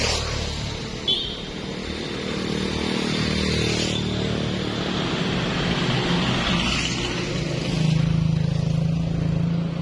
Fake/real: real